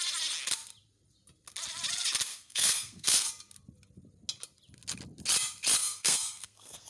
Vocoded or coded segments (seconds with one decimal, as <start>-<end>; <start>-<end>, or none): 2.3-3.3; 5.8-6.9